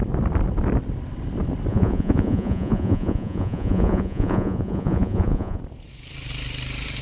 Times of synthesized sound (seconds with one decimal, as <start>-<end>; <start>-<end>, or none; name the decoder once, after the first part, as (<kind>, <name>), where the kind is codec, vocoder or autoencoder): 1.7-5.6 (vocoder, Vocos)